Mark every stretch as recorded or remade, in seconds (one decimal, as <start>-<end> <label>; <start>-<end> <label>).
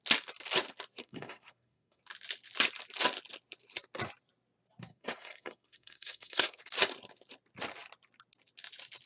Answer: 0.0-1.0 recorded; 1.0-2.0 remade; 2.0-4.9 recorded; 4.9-6.6 remade; 6.6-9.1 recorded